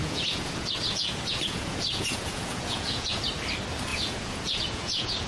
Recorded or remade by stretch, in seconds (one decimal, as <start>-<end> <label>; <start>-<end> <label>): 0.0-3.2 remade; 3.2-3.9 recorded; 3.9-5.3 remade

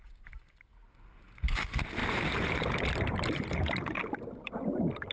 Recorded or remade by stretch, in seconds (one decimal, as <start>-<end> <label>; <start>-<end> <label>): 0.0-5.1 recorded

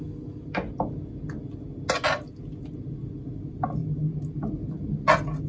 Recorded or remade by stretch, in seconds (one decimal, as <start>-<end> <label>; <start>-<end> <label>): 0.0-5.5 recorded

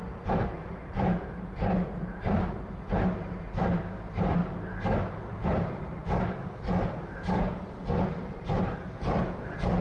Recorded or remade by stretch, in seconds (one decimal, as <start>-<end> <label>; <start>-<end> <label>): 0.0-4.4 remade; 4.4-5.1 recorded; 5.1-6.0 remade; 6.0-8.2 recorded; 8.2-9.8 remade

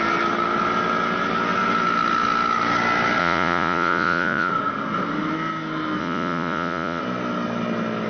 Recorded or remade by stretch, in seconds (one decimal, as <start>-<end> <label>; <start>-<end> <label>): 0.0-3.2 recorded; 3.2-4.5 remade; 4.5-6.0 recorded; 6.0-7.0 remade; 7.0-8.1 recorded

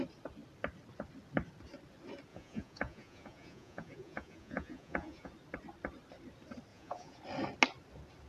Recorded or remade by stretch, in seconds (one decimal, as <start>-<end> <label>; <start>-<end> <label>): 0.0-2.3 recorded; 2.3-5.3 remade; 5.3-6.7 recorded; 6.7-7.2 remade; 7.2-8.3 recorded